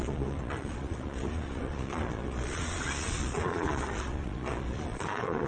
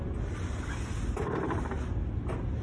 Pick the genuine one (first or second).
second